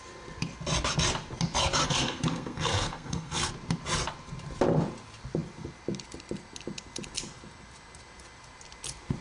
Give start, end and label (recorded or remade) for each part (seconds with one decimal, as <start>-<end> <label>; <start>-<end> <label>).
0.0-1.8 recorded; 1.8-3.5 remade; 3.5-9.2 recorded